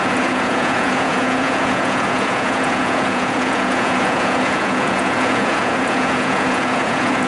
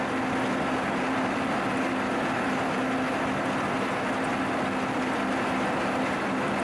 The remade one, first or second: first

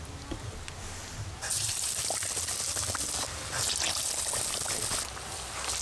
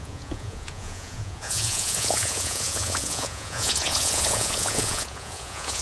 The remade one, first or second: second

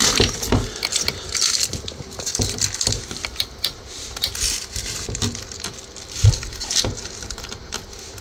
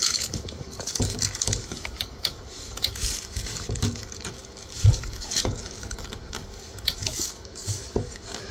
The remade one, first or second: second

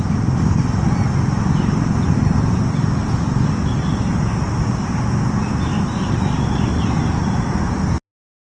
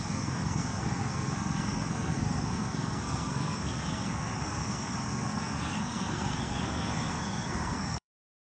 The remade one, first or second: second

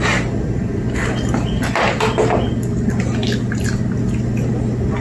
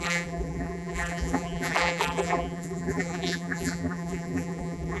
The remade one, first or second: second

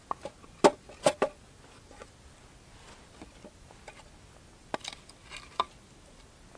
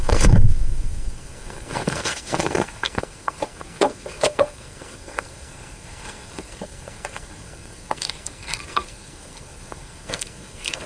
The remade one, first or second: second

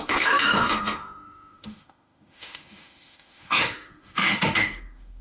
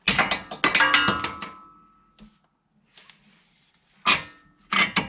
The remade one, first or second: first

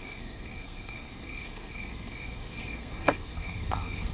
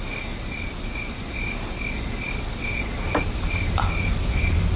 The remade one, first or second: first